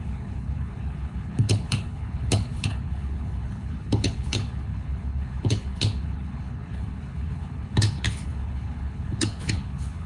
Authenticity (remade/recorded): remade